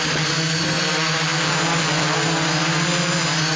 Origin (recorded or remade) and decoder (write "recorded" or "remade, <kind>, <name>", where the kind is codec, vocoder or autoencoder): recorded